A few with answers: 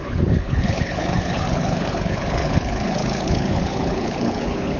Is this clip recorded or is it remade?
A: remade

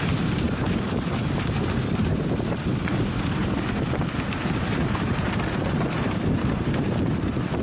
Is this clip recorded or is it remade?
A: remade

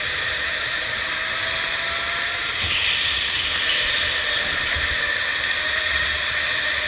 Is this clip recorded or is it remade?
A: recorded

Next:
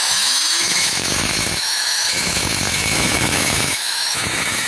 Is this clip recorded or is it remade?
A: remade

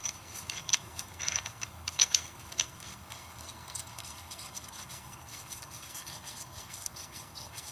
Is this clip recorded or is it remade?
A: remade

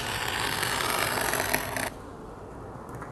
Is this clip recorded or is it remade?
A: recorded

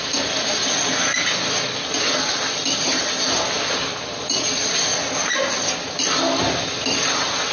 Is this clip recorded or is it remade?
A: recorded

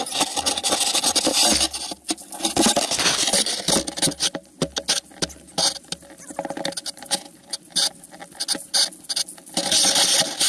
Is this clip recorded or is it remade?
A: recorded